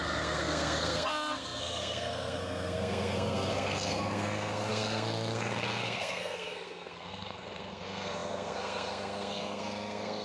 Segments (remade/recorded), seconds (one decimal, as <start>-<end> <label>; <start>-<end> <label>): 0.0-10.2 remade